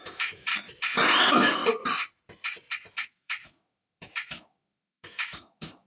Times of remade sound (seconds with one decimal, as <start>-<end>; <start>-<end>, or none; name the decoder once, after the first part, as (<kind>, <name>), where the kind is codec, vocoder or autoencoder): 0.0-0.5 (autoencoder, DAC-VAE); 1.2-1.6; 2.9-5.9